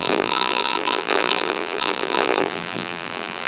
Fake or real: fake